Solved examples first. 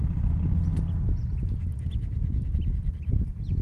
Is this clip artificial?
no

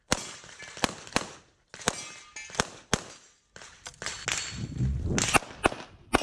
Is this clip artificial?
no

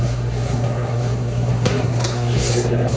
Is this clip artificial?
yes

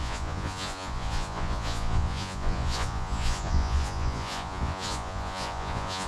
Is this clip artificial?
yes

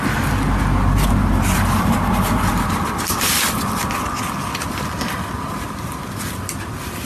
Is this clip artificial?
no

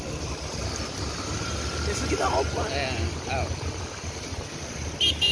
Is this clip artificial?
no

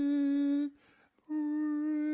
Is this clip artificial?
no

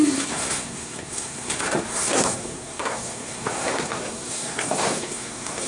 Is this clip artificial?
yes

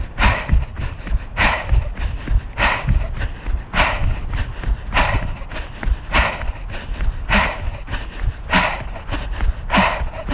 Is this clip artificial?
no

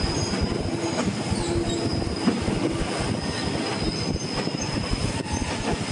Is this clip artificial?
no